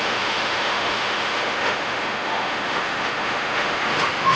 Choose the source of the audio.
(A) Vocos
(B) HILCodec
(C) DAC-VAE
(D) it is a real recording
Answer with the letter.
C